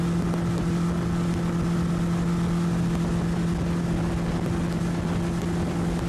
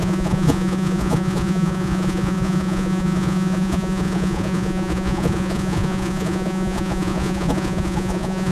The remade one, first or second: second